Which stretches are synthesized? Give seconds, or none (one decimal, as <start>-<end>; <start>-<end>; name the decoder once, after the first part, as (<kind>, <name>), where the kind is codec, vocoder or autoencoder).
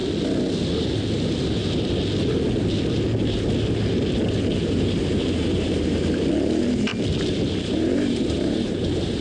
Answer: 4.6-6.9 (vocoder, BigVGAN v2); 7.7-9.2